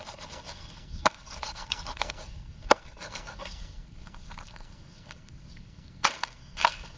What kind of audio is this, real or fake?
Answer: fake